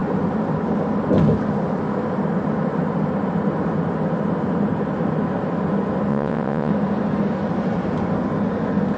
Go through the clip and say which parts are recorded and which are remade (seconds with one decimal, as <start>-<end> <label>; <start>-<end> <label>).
0.0-6.1 recorded; 6.1-6.7 remade; 6.7-9.0 recorded